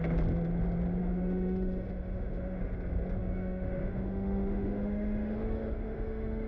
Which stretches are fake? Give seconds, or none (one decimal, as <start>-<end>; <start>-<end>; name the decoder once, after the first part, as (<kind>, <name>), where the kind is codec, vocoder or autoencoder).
1.0-2.6 (autoencoder, DAC-VAE); 3.2-6.5